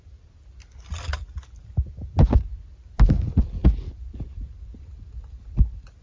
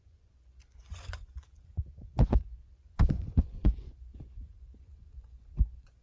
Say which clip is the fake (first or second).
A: second